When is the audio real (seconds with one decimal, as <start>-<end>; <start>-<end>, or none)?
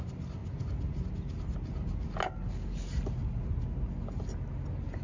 0.0-5.0